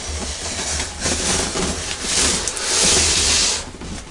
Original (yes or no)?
yes